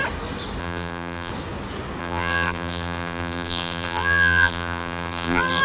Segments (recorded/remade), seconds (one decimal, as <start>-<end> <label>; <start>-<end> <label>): 0.0-0.6 recorded; 0.6-1.3 remade; 1.3-2.0 recorded; 2.0-5.6 remade